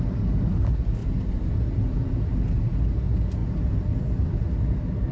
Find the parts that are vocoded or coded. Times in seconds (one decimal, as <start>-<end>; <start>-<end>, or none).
1.0-2.5; 3.4-4.4